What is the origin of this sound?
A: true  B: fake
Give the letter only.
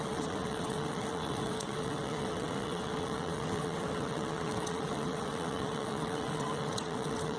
B